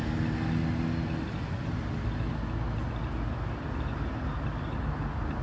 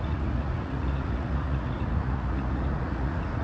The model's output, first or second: second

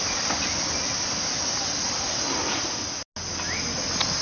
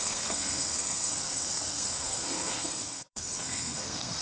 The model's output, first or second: second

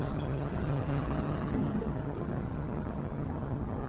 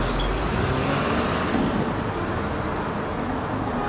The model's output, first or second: first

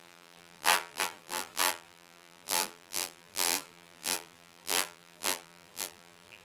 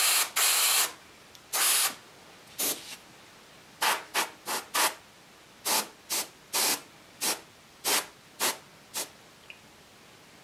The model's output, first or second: first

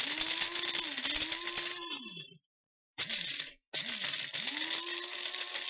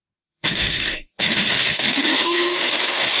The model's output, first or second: second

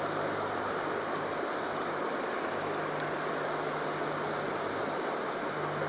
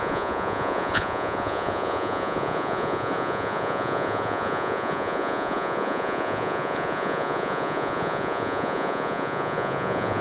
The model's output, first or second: second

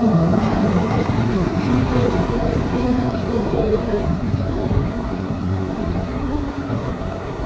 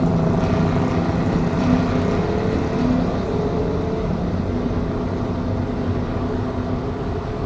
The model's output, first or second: first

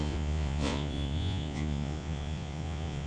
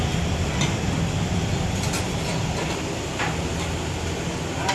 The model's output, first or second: first